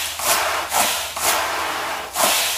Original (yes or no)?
no